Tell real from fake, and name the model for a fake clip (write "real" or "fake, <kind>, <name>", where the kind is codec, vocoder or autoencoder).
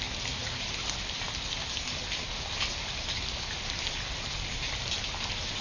real